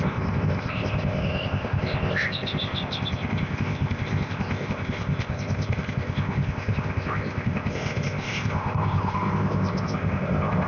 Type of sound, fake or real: fake